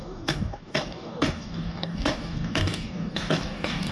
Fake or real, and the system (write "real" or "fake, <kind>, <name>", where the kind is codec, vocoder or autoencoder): fake, codec, DAC